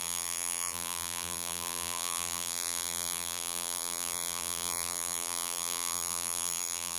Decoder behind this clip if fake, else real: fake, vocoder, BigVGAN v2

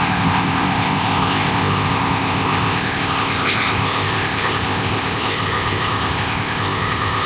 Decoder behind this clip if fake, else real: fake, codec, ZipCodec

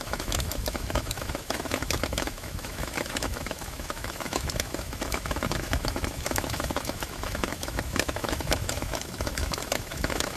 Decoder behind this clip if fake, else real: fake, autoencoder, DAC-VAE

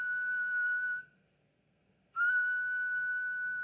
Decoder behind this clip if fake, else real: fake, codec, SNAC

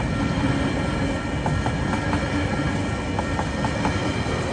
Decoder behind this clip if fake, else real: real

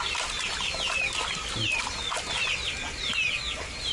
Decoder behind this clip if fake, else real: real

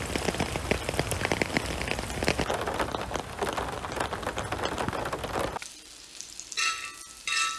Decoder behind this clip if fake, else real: real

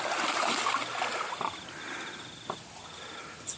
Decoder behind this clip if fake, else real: real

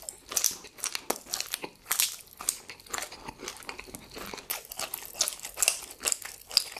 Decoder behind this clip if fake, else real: real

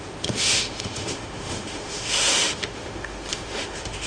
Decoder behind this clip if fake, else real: fake, autoencoder, DAC-VAE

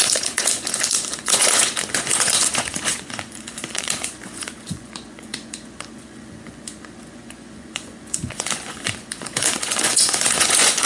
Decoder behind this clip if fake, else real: fake, vocoder, Vocos